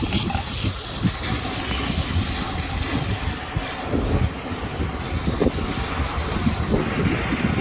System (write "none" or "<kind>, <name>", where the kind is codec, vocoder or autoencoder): none